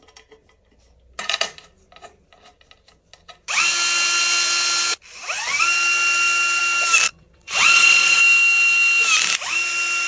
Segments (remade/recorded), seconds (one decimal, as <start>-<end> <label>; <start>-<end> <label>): 0.0-7.1 recorded; 7.1-8.2 remade; 8.2-10.1 recorded